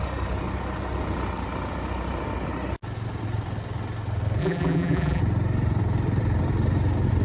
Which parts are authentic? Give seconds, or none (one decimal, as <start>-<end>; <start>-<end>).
0.0-4.4; 5.2-7.2